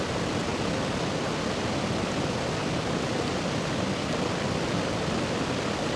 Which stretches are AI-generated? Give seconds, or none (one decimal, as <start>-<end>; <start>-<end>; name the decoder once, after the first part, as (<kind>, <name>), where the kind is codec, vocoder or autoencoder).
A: none